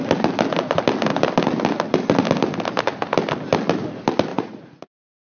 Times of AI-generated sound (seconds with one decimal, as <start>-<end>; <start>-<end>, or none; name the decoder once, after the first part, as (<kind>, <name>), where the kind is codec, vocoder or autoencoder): 4.3-4.8 (vocoder, Vocos)